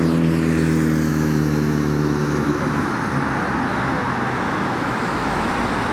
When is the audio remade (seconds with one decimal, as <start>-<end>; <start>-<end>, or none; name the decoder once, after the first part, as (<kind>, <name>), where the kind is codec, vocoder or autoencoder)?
1.1-2.9 (autoencoder, DAC-VAE); 3.7-5.5